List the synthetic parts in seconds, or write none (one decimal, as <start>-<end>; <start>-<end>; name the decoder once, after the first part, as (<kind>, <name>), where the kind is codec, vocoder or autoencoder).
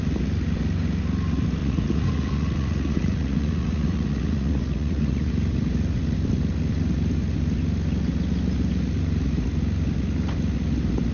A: 1.6-5.3 (vocoder, Vocos)